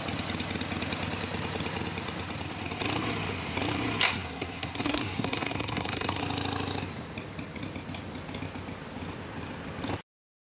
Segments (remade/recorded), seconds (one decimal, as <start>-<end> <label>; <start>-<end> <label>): 0.0-4.1 recorded; 4.1-6.2 remade; 6.2-10.6 recorded